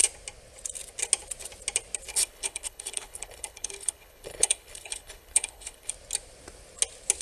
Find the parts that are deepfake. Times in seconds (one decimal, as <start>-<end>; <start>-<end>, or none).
2.1-5.9